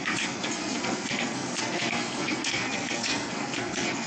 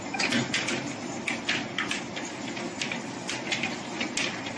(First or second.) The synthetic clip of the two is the first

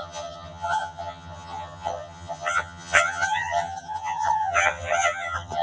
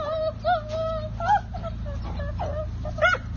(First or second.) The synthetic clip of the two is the first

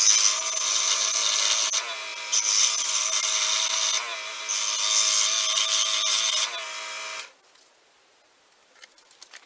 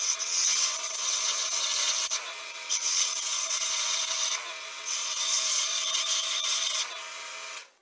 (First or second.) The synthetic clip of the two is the second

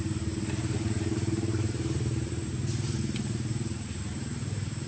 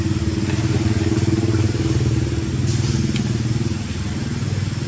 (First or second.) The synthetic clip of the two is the first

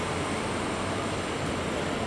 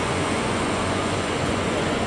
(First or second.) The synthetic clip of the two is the second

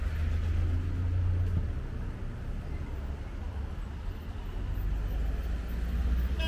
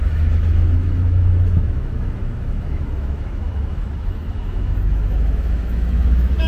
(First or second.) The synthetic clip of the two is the second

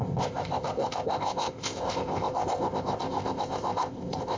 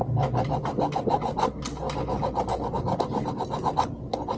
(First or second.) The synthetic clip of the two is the first